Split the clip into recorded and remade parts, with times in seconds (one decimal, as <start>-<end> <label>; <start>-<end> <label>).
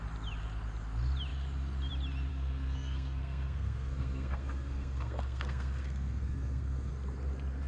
0.0-2.3 recorded; 2.3-6.9 remade; 6.9-7.7 recorded